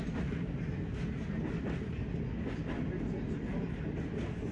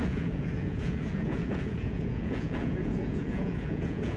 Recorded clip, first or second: first